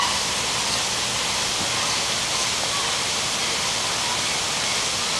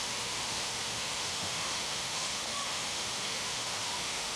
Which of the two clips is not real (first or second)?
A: second